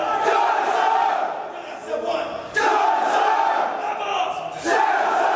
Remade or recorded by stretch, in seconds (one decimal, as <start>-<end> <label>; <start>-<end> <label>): 0.0-5.4 recorded